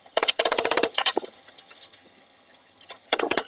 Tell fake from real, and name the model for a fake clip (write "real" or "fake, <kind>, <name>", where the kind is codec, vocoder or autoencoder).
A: fake, vocoder, HiFi-GAN